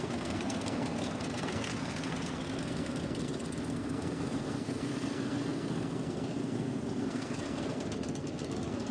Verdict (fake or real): fake